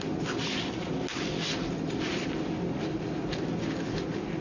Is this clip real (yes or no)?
yes